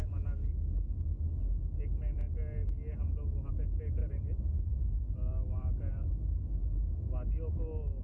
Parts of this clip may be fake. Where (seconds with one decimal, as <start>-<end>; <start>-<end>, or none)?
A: 4.0-5.9